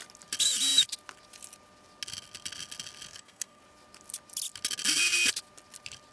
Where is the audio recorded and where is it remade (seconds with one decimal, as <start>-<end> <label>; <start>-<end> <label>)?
0.0-3.1 recorded; 3.1-3.6 remade; 3.6-6.1 recorded